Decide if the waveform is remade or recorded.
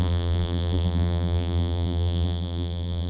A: remade